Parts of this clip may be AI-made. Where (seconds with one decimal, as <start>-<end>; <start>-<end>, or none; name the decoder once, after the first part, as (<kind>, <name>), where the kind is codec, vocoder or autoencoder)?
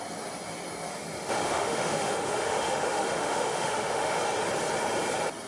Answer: 0.9-4.2 (autoencoder, DAC-VAE)